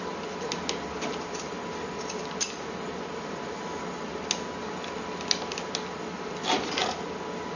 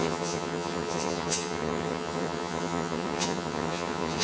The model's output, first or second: second